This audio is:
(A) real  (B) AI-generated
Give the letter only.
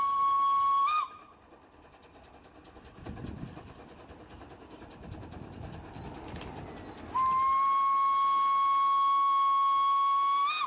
A